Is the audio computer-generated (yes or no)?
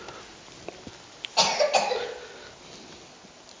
no